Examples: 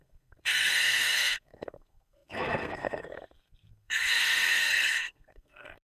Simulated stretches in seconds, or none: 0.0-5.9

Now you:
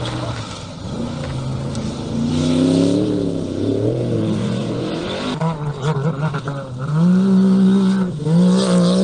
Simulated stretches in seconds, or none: 4.0-5.0

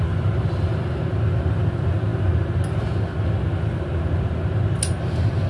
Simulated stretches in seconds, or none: none

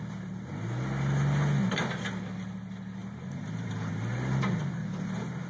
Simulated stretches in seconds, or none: 3.0-3.9

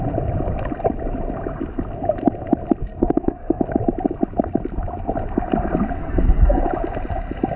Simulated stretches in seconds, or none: 2.8-3.6; 6.0-6.6

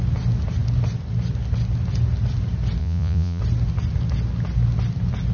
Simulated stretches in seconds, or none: 2.8-3.4

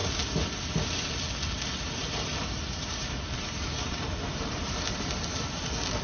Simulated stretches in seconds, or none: 2.0-5.6